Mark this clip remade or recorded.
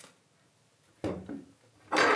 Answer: recorded